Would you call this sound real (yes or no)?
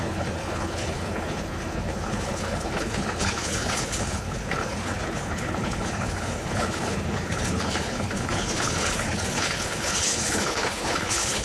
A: no